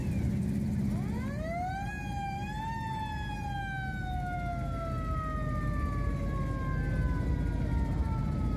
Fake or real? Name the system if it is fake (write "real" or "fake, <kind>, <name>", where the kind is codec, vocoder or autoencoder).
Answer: real